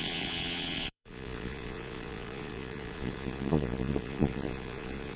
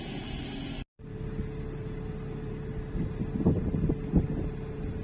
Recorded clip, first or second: second